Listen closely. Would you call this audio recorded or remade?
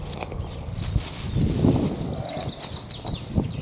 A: recorded